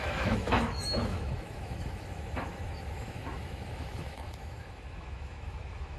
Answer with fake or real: fake